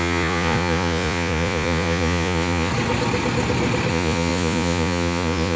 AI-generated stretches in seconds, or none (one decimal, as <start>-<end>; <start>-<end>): 0.0-2.7; 3.9-5.6